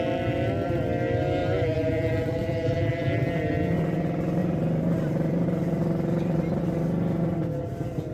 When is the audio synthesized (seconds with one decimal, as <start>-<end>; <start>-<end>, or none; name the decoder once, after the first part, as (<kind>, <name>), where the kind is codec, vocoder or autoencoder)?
1.4-3.3 (vocoder, BigVGAN v2); 4.4-6.6